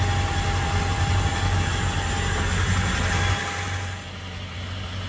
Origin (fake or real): real